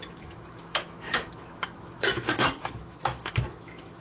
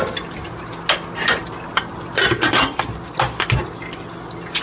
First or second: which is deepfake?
first